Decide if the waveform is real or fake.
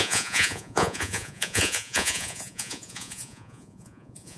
fake